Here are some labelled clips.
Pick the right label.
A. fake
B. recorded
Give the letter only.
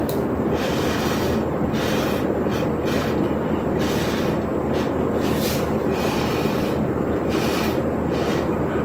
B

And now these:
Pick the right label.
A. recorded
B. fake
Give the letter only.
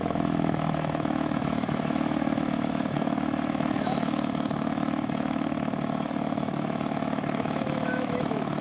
B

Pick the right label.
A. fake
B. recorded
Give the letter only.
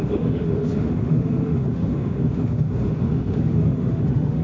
A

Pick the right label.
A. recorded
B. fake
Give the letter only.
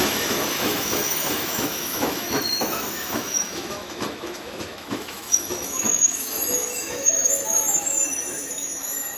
B